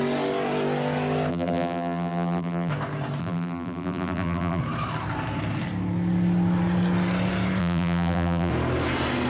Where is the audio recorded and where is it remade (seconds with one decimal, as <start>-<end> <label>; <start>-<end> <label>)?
0.0-1.3 recorded; 1.3-2.7 remade; 2.7-3.2 recorded; 3.2-4.6 remade; 4.6-7.6 recorded; 7.6-8.5 remade; 8.5-9.3 recorded